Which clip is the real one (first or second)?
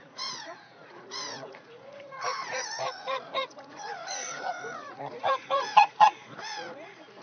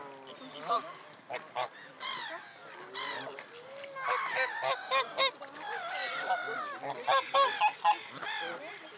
second